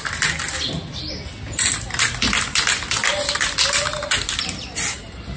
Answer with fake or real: real